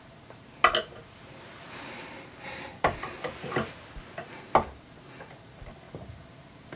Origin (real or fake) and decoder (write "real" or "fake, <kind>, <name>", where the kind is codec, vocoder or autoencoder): real